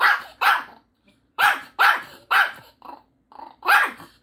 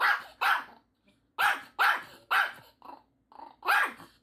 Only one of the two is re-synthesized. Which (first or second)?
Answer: first